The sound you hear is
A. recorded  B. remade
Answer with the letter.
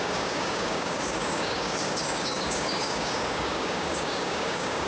B